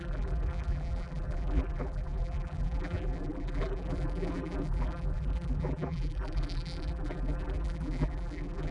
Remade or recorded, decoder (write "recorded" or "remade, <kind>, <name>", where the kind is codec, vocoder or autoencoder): remade, vocoder, BigVGAN v2